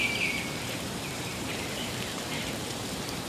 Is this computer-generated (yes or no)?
yes